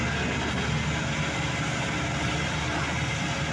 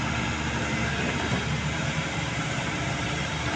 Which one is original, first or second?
first